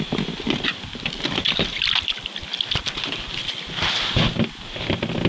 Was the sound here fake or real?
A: real